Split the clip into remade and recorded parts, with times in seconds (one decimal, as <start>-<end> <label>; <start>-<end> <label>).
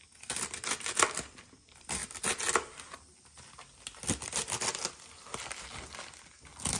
0.0-6.8 recorded